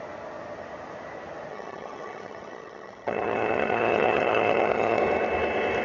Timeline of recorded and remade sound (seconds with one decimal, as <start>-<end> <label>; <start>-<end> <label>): 0.0-1.5 recorded; 1.5-5.0 remade; 5.0-5.8 recorded